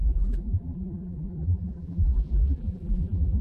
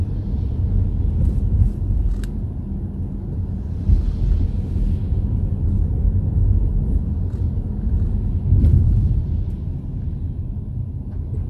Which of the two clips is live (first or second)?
second